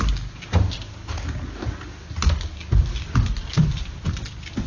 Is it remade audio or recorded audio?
recorded